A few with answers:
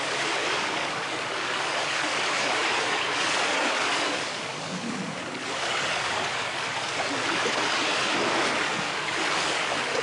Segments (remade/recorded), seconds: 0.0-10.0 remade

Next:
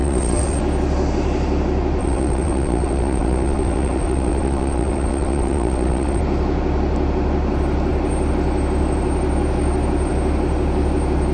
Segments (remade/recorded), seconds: 0.0-0.6 remade; 0.6-2.0 recorded; 2.0-6.2 remade; 6.2-11.3 recorded

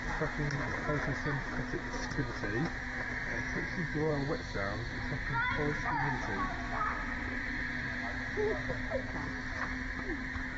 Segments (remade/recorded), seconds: 0.0-3.3 recorded; 3.3-4.1 remade; 4.1-10.6 recorded

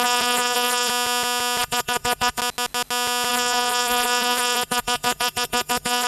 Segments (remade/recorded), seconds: 0.0-0.9 remade; 0.9-1.6 recorded; 1.6-2.4 remade; 2.4-3.3 recorded; 3.3-6.1 remade

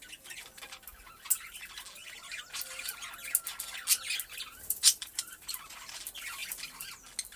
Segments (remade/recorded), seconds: 0.0-2.0 recorded; 2.0-3.1 remade; 3.1-4.5 recorded; 4.5-5.9 remade; 5.9-7.4 recorded

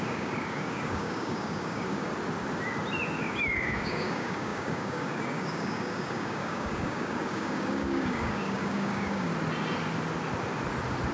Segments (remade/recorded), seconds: 0.0-2.1 remade; 2.1-3.2 recorded; 3.2-9.3 remade; 9.3-11.1 recorded

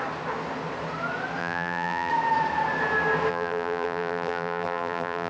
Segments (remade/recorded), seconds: 0.0-1.4 recorded; 1.4-2.1 remade; 2.1-3.3 recorded; 3.3-5.3 remade